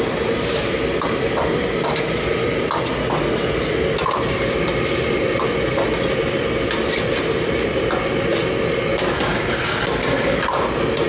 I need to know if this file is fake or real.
real